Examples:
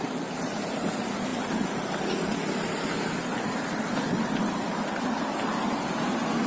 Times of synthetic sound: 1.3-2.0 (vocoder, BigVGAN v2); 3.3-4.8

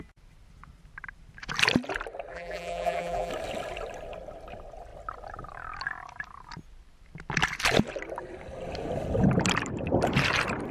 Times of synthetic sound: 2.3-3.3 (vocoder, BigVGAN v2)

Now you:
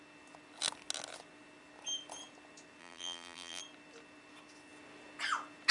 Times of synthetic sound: 2.8-3.6 (vocoder, BigVGAN v2)